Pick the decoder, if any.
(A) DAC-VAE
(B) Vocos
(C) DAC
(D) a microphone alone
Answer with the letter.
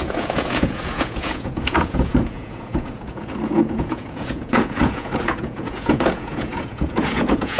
B